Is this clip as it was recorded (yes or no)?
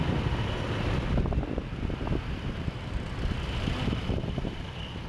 yes